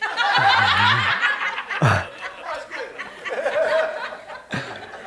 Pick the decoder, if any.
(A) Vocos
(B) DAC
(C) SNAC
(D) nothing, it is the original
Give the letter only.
D